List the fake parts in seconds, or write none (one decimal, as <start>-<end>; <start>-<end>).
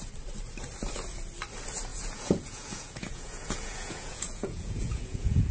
1.9-5.5